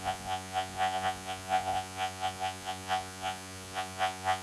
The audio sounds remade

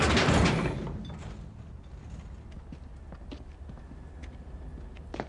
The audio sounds recorded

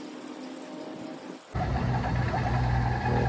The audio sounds recorded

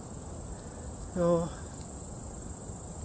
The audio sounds recorded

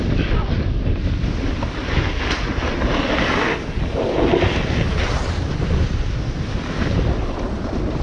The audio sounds recorded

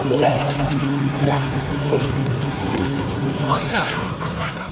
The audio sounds remade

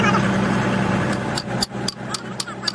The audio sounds recorded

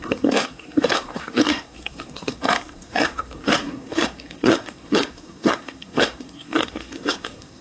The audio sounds remade